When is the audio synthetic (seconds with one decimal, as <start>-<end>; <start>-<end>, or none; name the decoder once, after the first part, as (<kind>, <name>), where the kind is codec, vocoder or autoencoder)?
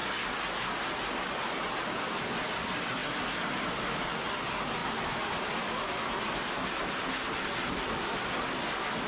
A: none